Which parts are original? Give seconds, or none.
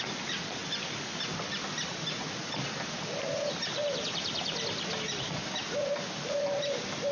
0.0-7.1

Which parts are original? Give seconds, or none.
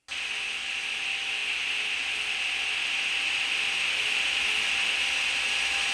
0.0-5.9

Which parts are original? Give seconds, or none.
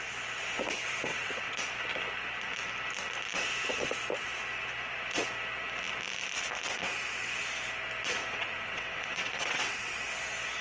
0.0-1.1; 1.6-8.2; 10.0-10.6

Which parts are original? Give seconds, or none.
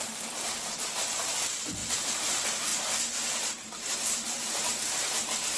2.7-3.5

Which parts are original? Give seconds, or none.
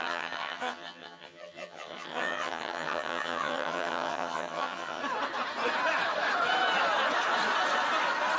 5.0-8.4